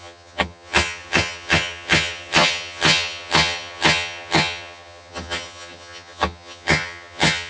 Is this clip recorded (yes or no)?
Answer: no